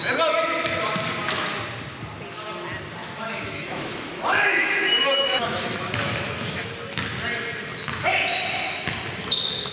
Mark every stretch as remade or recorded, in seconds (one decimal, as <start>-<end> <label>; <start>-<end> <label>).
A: 0.0-3.0 recorded; 3.0-6.7 remade; 6.7-9.7 recorded